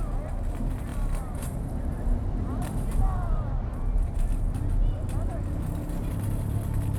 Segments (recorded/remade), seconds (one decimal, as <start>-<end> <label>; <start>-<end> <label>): 0.0-0.9 recorded; 0.9-4.3 remade; 4.3-7.0 recorded